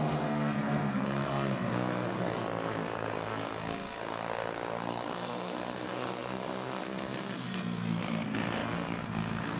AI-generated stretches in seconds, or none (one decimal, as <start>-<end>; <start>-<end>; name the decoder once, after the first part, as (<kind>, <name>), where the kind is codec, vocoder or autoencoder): 0.0-9.6 (codec, SNAC)